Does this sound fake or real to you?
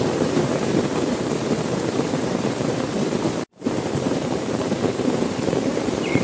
fake